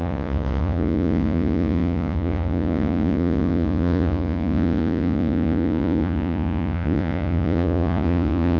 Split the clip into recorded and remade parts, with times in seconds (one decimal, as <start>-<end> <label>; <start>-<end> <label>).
0.0-8.6 remade